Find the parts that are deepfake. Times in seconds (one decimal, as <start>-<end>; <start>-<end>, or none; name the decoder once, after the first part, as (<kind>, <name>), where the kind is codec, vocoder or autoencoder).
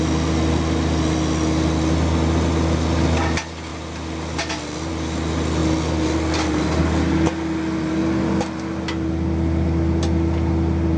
none